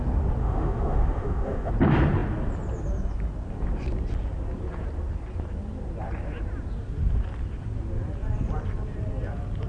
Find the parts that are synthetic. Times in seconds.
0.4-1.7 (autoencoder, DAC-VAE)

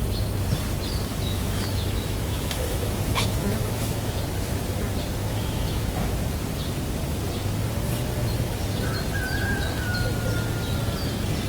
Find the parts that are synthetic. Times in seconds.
1.1-4.2 (autoencoder, DAC-VAE); 5.2-6.1